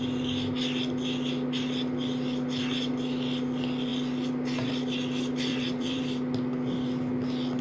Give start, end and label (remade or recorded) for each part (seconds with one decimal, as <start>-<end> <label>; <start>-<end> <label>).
0.0-5.5 recorded; 5.5-6.0 remade; 6.0-7.6 recorded